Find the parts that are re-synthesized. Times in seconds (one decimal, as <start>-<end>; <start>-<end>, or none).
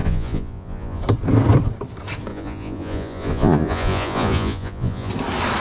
0.0-1.0; 2.3-5.1